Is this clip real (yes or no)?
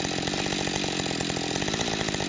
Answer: yes